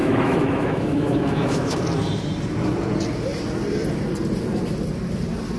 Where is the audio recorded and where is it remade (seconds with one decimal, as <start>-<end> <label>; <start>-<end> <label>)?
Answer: 0.0-1.8 remade; 1.8-5.6 recorded

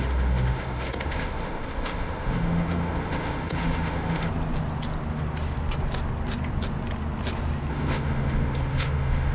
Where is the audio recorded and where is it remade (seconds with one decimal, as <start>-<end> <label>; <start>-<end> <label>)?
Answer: 0.0-4.3 remade; 4.3-7.7 recorded; 7.7-9.3 remade

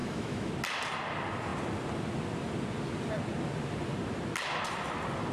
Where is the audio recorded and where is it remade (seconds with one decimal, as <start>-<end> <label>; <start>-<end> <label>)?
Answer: 0.0-0.5 remade; 0.5-5.3 recorded

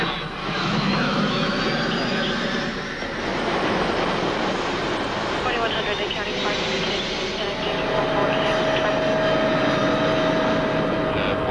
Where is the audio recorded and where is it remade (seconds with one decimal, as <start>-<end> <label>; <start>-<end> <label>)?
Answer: 0.0-0.4 recorded; 0.4-1.6 remade; 1.6-11.5 recorded